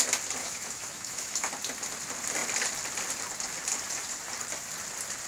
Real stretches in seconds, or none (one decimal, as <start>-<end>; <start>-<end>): 0.0-0.4; 1.5-5.3